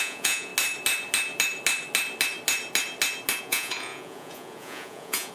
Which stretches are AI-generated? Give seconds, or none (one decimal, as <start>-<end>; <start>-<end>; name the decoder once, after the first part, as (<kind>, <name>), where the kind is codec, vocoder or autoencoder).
0.0-0.5 (vocoder, Vocos); 3.4-5.3